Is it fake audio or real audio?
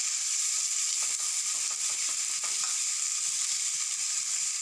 fake